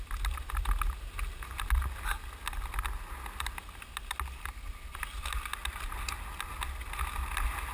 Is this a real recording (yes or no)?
yes